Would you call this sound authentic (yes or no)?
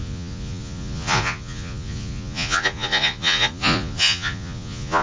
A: no